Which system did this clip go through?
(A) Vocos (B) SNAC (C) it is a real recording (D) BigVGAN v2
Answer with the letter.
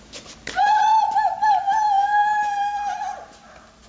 C